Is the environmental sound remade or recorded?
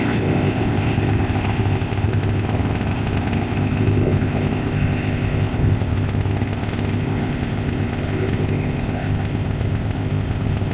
remade